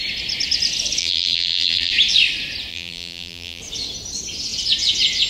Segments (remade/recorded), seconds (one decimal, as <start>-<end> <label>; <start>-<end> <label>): 0.0-1.0 recorded; 1.0-1.9 remade; 1.9-2.7 recorded; 2.7-3.6 remade; 3.6-5.3 recorded